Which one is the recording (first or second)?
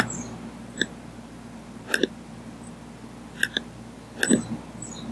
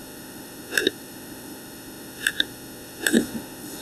first